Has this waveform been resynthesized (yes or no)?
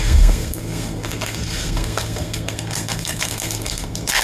yes